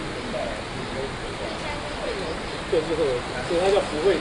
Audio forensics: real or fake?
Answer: real